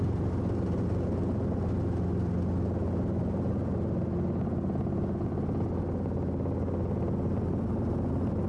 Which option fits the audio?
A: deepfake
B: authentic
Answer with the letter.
B